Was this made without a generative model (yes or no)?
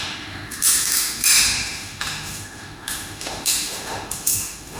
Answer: no